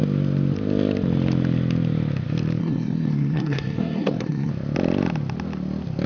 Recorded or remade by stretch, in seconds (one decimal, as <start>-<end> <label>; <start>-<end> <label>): 0.0-2.6 recorded; 2.6-4.5 remade; 4.5-6.1 recorded